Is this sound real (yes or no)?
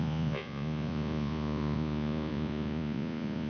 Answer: no